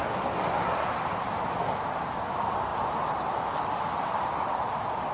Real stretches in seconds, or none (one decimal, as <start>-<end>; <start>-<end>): 0.0-2.7